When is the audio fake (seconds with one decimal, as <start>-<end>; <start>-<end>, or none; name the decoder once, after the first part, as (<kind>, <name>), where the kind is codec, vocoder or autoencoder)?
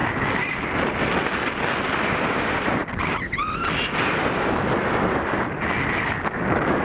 none